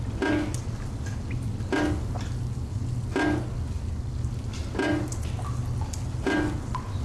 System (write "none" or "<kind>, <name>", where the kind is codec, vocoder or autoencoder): none